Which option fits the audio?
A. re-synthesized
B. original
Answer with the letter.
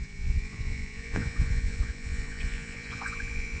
A